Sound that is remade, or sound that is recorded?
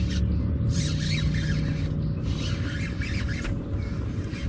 recorded